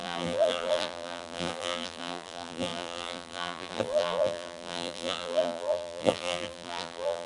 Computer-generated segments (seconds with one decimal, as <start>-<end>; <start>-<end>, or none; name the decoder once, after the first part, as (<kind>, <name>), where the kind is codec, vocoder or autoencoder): 0.0-7.3 (vocoder, BigVGAN v2)